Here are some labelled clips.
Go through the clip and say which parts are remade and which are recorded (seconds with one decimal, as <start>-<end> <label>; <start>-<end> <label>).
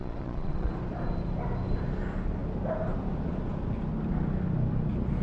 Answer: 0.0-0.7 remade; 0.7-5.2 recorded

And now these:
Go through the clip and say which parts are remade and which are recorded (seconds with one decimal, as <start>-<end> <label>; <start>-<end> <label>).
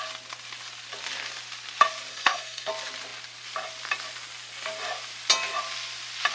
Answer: 0.0-2.1 recorded; 2.1-2.7 remade; 2.7-6.3 recorded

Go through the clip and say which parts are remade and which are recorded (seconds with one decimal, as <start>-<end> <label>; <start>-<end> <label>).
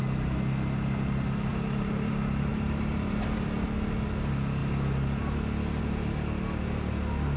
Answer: 0.0-1.5 recorded; 1.5-2.1 remade; 2.1-2.5 recorded; 2.5-3.2 remade; 3.2-7.4 recorded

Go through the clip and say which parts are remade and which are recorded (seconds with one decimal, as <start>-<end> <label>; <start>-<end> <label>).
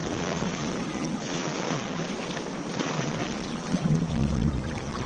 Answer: 0.0-2.0 remade; 2.0-2.7 recorded; 2.7-5.1 remade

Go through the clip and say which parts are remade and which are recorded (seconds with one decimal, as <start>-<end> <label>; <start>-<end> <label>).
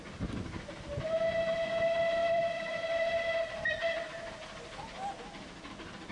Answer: 0.0-2.2 recorded; 2.2-3.1 remade; 3.1-6.1 recorded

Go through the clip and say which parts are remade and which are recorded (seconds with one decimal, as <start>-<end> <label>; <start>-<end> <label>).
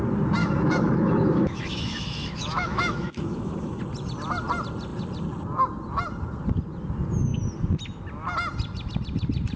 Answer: 0.0-0.4 recorded; 0.4-3.8 remade; 3.8-9.6 recorded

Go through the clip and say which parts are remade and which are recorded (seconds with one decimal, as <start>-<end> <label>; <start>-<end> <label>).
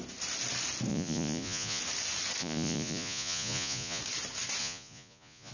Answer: 0.0-0.9 recorded; 0.9-1.8 remade; 1.8-2.4 recorded; 2.4-4.0 remade; 4.0-4.6 recorded; 4.6-5.5 remade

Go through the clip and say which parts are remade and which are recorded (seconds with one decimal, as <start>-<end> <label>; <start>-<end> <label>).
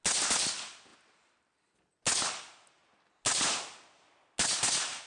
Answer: 0.0-5.1 recorded